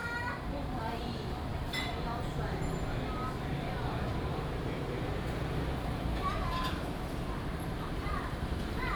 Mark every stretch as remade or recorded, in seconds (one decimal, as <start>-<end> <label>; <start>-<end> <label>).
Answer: 0.0-0.5 remade; 0.5-4.1 recorded; 4.1-6.3 remade; 6.3-9.0 recorded